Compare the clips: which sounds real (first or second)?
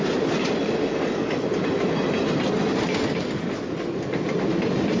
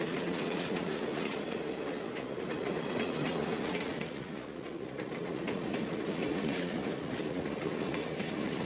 first